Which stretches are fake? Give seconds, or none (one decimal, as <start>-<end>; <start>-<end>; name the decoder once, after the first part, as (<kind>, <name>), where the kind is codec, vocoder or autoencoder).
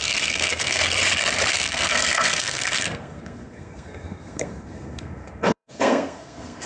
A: 0.0-0.8 (codec, SNAC); 1.5-6.7